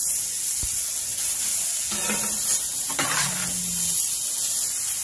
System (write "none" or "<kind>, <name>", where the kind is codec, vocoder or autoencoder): none